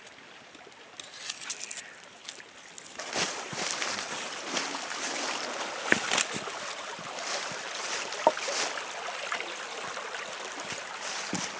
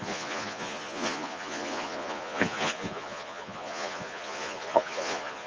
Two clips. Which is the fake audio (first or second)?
second